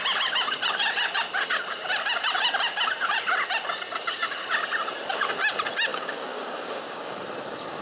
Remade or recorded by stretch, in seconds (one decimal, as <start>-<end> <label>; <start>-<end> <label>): 0.0-5.9 recorded; 5.9-7.1 remade; 7.1-7.8 recorded